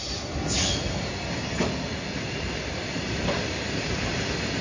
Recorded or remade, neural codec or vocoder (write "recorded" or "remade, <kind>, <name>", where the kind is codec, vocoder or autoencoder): recorded